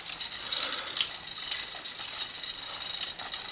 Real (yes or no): yes